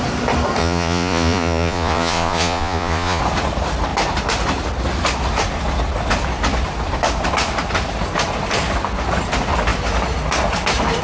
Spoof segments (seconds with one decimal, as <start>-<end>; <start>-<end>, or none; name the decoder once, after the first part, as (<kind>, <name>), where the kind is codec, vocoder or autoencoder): 0.6-3.2 (vocoder, Vocos)